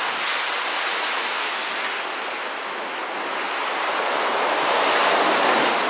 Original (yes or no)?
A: yes